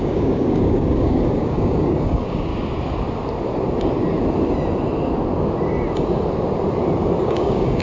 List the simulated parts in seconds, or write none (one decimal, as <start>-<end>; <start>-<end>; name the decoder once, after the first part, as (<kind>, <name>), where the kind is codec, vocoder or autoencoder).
0.0-2.5 (codec, DAC); 7.2-7.8